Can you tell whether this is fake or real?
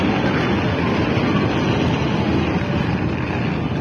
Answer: real